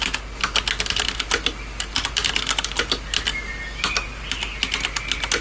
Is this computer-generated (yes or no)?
no